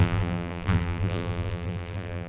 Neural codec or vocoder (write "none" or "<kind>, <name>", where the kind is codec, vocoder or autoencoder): vocoder, BigVGAN v2